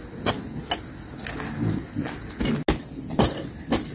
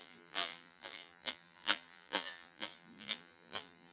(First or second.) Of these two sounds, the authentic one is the first